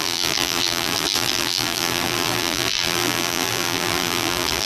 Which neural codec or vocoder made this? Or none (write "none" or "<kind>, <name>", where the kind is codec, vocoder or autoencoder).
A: vocoder, BigVGAN v2